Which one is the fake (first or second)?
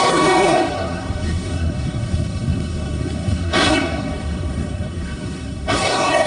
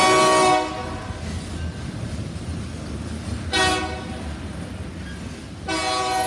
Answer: first